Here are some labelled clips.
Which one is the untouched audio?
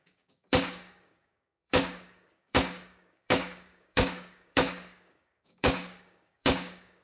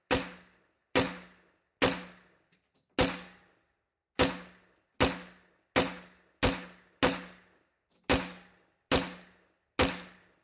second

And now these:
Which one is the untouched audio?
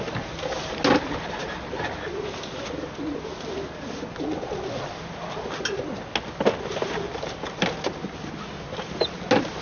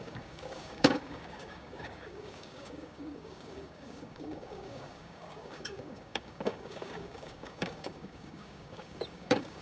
first